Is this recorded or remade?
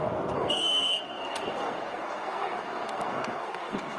remade